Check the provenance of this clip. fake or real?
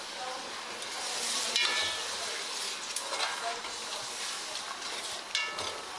real